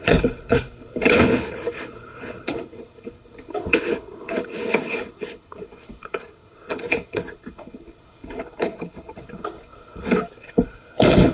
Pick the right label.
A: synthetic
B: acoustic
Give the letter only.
A